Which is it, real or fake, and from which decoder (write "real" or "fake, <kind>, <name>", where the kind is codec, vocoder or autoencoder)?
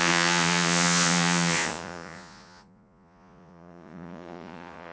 fake, vocoder, Vocos